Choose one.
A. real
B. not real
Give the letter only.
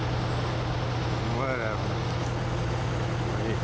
A